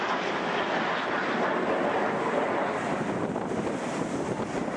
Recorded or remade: recorded